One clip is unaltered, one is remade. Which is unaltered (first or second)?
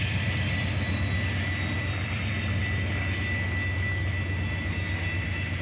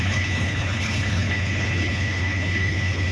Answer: first